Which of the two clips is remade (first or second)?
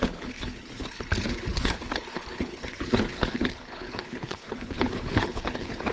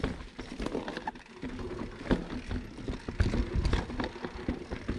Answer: first